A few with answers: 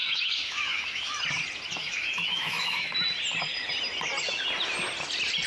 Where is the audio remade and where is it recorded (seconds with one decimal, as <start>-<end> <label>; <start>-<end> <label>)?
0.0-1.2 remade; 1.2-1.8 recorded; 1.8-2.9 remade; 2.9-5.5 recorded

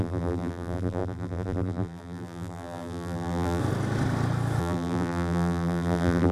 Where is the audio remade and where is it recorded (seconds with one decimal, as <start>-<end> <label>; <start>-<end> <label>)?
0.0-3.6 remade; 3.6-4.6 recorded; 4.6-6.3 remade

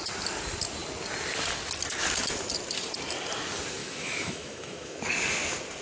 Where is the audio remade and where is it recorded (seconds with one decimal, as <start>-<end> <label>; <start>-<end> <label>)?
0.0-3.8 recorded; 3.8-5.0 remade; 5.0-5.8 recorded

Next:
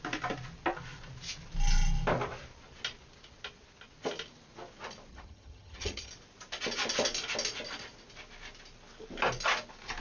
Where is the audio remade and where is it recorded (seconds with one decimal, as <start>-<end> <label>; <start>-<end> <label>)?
0.0-5.1 recorded; 5.1-6.1 remade; 6.1-10.0 recorded